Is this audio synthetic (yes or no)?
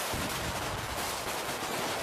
no